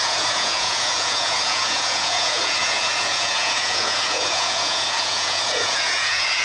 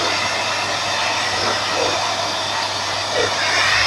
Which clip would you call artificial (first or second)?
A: first